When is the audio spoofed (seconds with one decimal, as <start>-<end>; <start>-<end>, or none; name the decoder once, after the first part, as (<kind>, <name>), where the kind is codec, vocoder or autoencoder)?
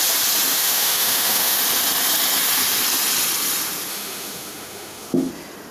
0.5-1.6 (autoencoder, DAC-VAE); 3.9-5.3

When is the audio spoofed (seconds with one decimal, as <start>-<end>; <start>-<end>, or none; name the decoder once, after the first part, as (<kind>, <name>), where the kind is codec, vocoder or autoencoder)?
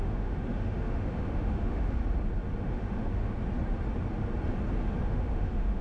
0.0-2.0 (autoencoder, DAC-VAE); 2.6-3.4; 5.0-5.8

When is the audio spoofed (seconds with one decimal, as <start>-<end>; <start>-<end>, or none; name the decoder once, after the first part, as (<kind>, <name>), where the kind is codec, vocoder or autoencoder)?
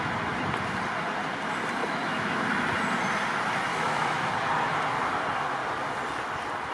1.8-2.4 (autoencoder, DAC-VAE); 3.7-4.3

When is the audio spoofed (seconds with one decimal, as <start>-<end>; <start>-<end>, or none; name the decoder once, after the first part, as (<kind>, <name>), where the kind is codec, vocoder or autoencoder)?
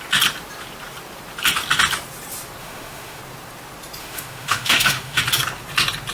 2.6-3.2 (autoencoder, DAC-VAE); 4.0-5.2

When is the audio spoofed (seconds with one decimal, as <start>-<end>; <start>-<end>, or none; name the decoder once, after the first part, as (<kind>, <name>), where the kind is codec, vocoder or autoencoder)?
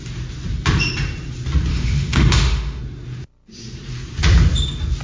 1.7-2.8 (autoencoder, DAC-VAE)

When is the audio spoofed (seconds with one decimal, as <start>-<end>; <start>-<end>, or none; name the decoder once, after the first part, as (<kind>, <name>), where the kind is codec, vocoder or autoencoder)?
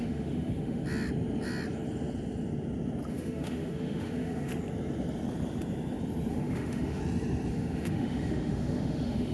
0.0-0.8 (autoencoder, DAC-VAE); 3.1-4.5; 6.3-7.0; 7.5-9.3